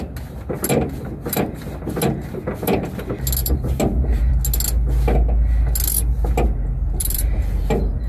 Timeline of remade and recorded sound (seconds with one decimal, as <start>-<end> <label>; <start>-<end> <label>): 0.0-3.4 recorded; 3.4-4.3 remade; 4.3-7.0 recorded; 7.0-8.1 remade